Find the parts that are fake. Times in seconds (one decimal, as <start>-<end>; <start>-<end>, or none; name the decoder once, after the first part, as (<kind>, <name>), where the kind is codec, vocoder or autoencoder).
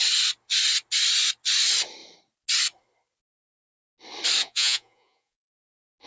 4.4-5.5 (vocoder, Vocos)